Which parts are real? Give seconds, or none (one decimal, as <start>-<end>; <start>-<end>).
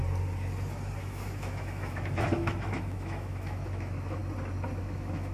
0.0-1.0; 4.2-4.8